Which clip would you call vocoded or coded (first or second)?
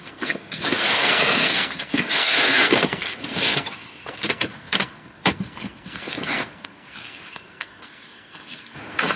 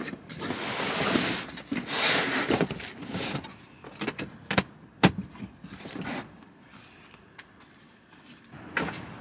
first